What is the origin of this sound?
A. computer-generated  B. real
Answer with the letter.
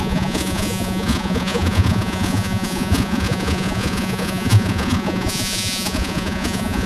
A